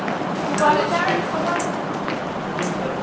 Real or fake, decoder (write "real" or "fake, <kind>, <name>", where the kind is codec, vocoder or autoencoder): real